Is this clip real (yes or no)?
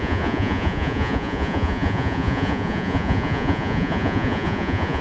no